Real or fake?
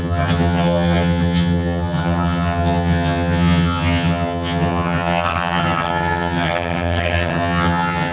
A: fake